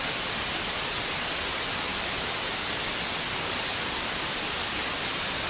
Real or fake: real